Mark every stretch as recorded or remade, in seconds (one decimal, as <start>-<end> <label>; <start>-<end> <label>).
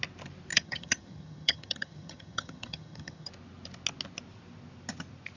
0.0-0.5 recorded; 0.5-3.3 remade; 3.3-5.4 recorded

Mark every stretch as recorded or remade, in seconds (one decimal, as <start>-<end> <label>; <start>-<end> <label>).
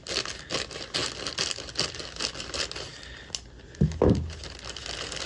0.0-5.3 recorded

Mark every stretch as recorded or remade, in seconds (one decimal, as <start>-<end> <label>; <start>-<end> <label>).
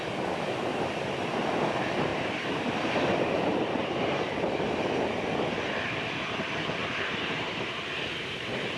0.0-0.7 recorded; 0.7-1.6 remade; 1.6-2.1 recorded; 2.1-4.3 remade; 4.3-6.8 recorded; 6.8-8.8 remade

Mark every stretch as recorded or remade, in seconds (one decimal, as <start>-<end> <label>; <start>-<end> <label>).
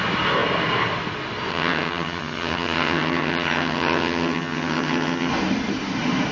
0.0-1.5 recorded; 1.5-5.3 remade; 5.3-6.3 recorded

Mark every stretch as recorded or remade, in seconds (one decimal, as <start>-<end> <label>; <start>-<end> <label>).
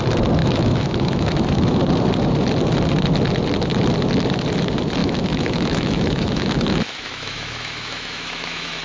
0.0-0.4 recorded; 0.4-1.8 remade; 1.8-5.0 recorded; 5.0-8.8 remade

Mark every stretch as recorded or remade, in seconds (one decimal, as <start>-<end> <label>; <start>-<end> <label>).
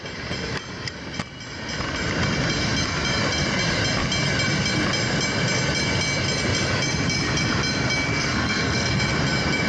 0.0-8.1 recorded; 8.1-9.0 remade; 9.0-9.7 recorded